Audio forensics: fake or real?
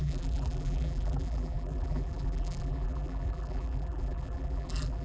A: fake